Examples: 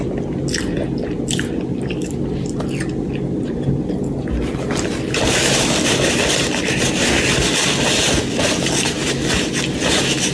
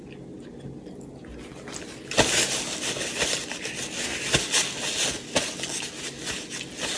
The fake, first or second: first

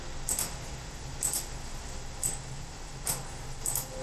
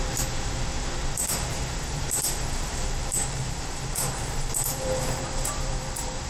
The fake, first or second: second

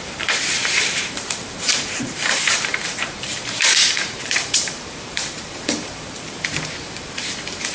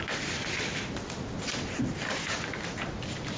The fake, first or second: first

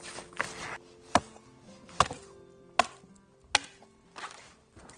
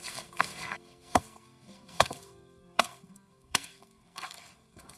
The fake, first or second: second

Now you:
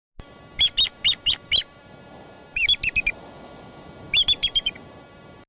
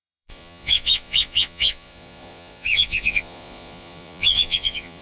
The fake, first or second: second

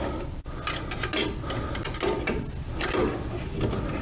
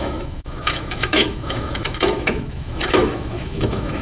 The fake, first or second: second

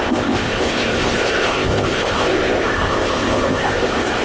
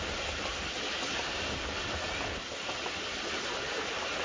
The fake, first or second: first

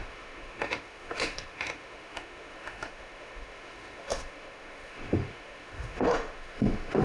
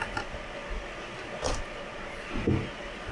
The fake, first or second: first